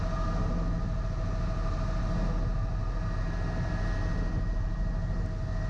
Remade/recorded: recorded